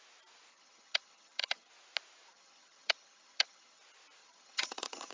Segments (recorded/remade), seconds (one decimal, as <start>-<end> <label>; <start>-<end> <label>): 0.0-0.5 recorded; 0.5-1.7 remade; 1.7-2.3 recorded; 2.3-3.8 remade; 3.8-4.2 recorded; 4.2-5.1 remade